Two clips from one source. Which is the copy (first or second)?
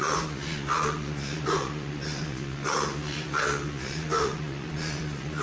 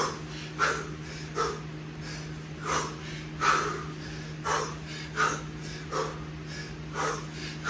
first